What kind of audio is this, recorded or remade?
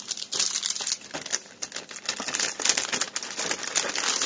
recorded